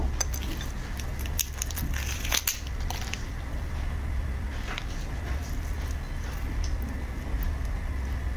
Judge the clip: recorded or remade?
recorded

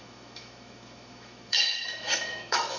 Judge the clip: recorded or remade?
remade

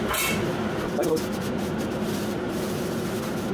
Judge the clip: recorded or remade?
recorded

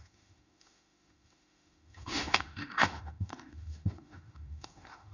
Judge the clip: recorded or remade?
remade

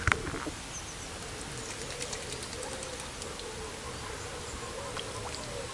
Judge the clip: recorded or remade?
recorded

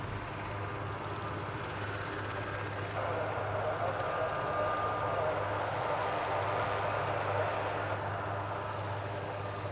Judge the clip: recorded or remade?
recorded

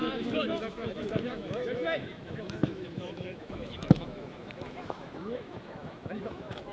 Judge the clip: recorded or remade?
remade